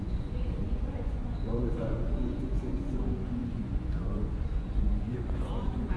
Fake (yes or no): yes